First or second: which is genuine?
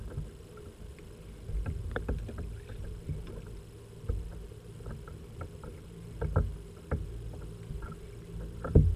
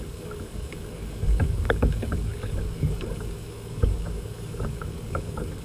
first